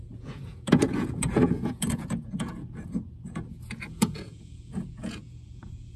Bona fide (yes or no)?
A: no